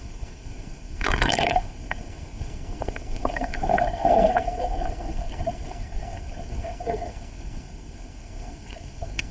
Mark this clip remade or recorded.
remade